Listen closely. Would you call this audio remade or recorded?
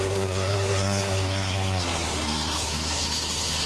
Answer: remade